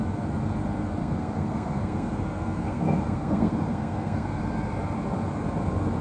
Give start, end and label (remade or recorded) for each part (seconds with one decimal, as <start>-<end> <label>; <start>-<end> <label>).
0.0-1.0 recorded; 1.0-4.4 remade; 4.4-6.0 recorded